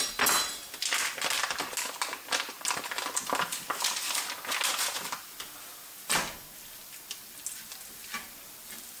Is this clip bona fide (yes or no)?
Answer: yes